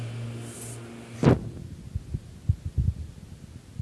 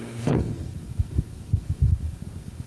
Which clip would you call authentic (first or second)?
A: first